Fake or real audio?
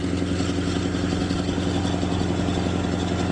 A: real